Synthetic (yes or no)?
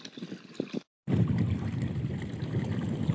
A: no